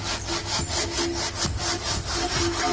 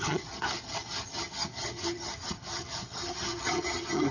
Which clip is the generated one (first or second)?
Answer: second